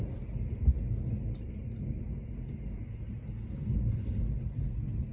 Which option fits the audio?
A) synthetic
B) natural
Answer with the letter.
B